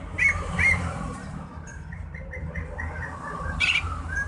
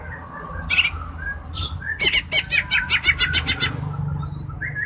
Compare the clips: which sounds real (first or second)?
second